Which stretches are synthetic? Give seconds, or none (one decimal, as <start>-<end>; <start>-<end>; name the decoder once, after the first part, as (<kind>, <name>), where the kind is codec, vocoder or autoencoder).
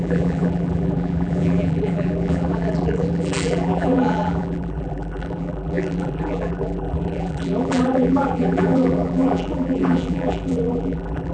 0.0-11.3 (vocoder, BigVGAN v2)